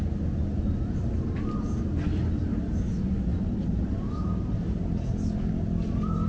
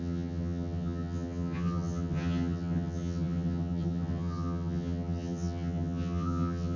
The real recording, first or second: first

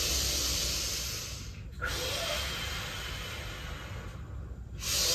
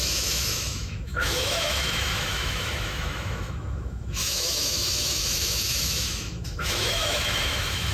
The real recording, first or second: first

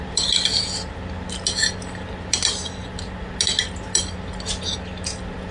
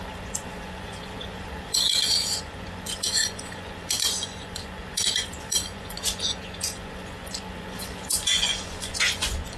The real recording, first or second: first